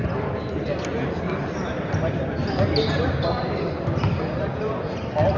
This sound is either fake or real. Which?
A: real